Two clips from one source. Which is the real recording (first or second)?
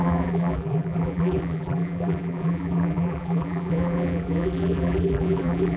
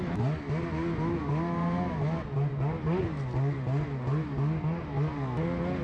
second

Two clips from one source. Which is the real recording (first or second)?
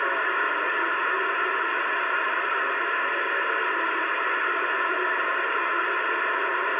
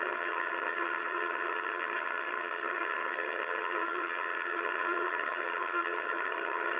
first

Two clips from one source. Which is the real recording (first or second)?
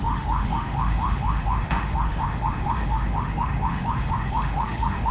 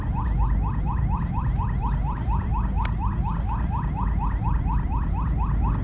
second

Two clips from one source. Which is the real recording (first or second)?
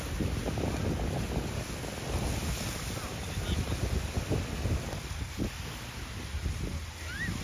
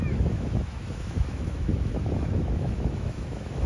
first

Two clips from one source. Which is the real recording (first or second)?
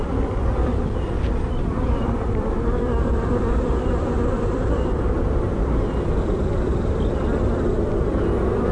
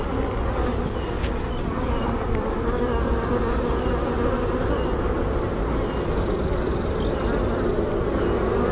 second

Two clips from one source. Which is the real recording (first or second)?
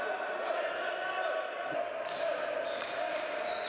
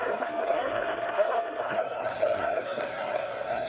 first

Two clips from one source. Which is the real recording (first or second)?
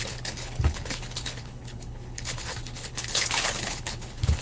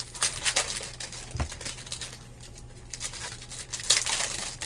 second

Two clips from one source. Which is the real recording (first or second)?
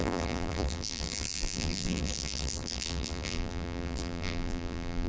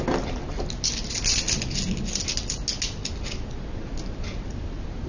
second